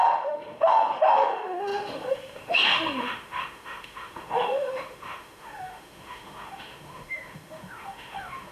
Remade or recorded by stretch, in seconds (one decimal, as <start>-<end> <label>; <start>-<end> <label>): 0.0-8.5 remade